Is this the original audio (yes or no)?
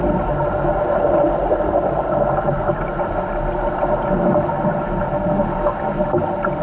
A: yes